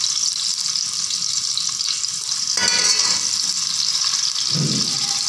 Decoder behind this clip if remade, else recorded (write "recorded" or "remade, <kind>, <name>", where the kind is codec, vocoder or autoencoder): recorded